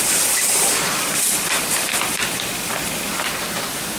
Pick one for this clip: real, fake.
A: real